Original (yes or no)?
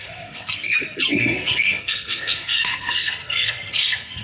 no